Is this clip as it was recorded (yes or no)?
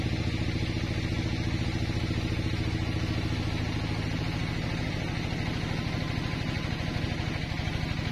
yes